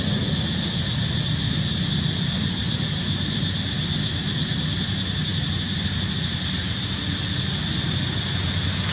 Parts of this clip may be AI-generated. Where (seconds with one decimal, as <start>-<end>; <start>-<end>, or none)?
none